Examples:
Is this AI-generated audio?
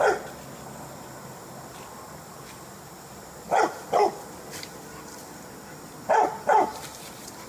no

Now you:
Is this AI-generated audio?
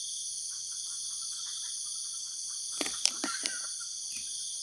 no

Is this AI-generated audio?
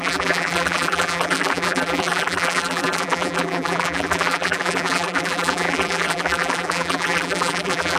yes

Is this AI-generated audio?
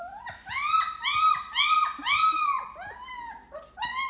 no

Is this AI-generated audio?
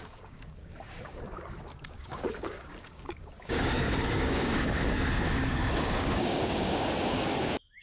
yes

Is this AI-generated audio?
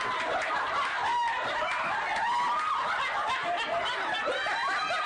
no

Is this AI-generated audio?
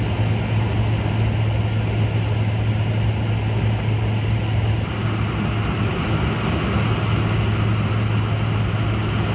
no